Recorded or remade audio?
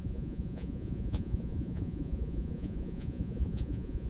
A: remade